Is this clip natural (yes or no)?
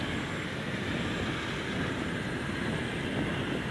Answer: yes